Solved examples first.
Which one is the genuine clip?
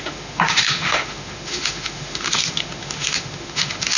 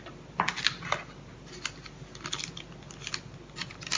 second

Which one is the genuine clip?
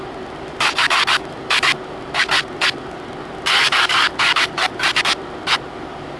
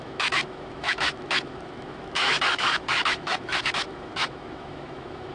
first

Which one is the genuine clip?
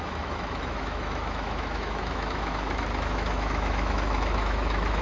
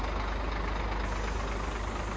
second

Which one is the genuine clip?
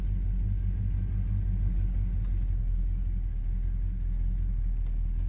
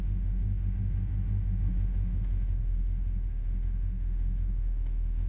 first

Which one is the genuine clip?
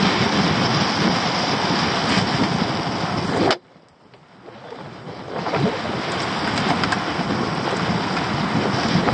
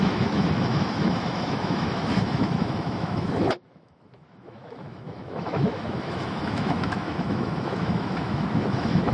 first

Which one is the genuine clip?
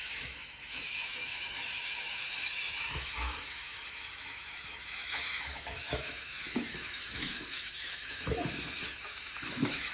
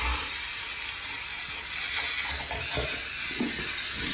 second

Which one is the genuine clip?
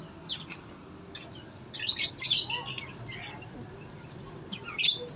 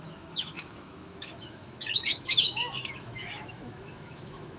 first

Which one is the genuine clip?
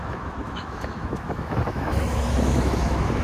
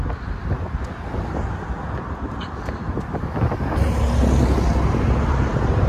second